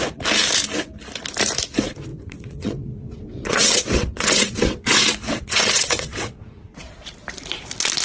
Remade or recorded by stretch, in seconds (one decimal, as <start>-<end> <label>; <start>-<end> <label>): 0.0-2.1 recorded; 2.1-6.9 remade; 6.9-8.0 recorded